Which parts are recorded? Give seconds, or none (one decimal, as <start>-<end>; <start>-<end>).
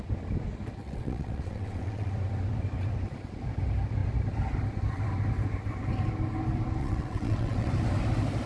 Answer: 0.0-0.8; 2.1-6.8; 7.7-8.5